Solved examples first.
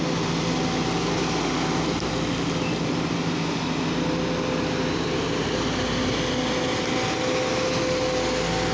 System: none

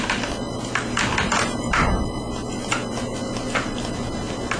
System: none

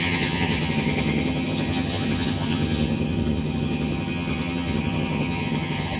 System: vocoder, HiFi-GAN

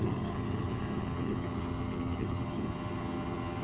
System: vocoder, HiFi-GAN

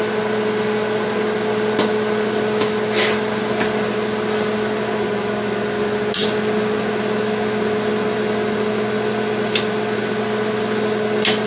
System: none